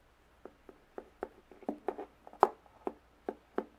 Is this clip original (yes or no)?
yes